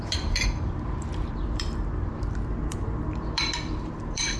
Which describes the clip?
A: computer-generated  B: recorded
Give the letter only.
A